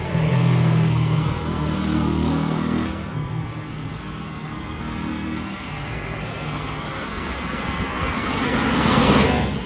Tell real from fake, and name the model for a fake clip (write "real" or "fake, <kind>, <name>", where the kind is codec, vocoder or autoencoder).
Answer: fake, codec, SNAC